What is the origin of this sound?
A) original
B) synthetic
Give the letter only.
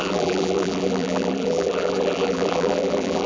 B